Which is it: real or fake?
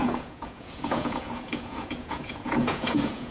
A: fake